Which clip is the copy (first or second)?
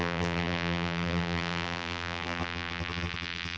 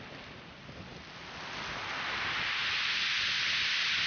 first